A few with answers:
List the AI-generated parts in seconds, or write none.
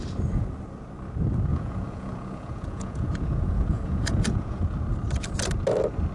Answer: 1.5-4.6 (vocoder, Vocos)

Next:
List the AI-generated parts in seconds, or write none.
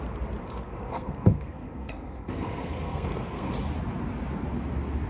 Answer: 0.4-3.5 (codec, SNAC)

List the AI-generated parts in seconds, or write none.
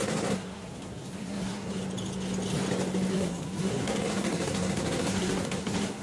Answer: 0.0-1.8 (codec, SNAC); 3.1-6.0